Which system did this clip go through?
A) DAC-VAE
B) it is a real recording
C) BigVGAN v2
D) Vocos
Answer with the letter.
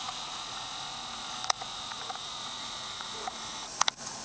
D